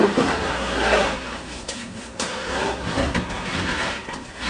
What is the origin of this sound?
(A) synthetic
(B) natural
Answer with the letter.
A